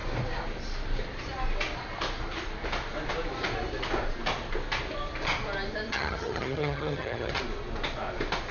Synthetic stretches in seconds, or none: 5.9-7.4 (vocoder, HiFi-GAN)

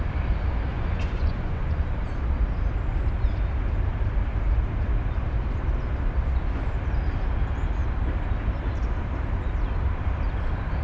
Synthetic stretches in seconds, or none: 0.7-1.8 (vocoder, Vocos)